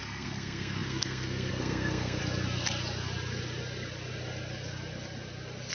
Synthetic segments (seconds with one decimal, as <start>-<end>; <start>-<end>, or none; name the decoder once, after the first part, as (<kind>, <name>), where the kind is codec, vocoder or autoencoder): 0.0-2.2 (codec, SNAC)